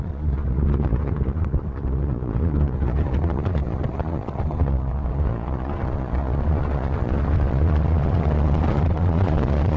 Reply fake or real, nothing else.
fake